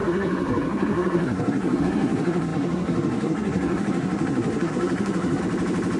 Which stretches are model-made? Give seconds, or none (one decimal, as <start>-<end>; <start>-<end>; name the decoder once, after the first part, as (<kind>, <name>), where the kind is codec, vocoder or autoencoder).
0.0-5.4 (codec, SNAC)